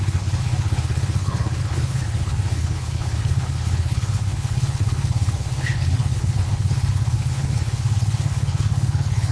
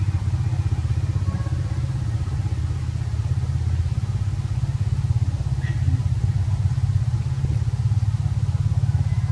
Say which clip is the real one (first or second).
second